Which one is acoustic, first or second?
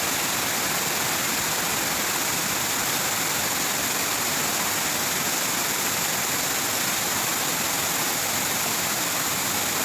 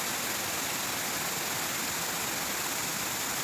second